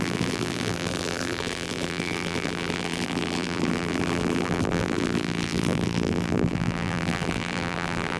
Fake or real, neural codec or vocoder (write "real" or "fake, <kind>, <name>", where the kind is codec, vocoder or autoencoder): fake, vocoder, BigVGAN v2